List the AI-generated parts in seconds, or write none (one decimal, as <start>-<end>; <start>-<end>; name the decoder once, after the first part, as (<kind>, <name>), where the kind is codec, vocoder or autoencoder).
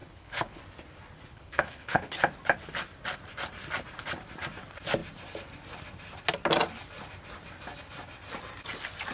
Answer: 0.0-0.6 (codec, HILCodec); 1.3-2.2